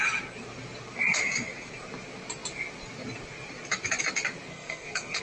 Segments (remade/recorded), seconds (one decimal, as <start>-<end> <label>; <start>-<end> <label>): 0.0-4.5 recorded; 4.5-5.2 remade